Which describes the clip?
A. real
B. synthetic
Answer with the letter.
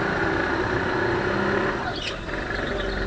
A